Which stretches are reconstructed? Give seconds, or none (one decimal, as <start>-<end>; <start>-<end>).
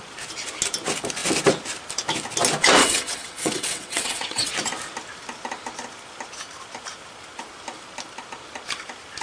2.8-4.5